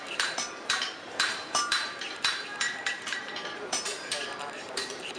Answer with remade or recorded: remade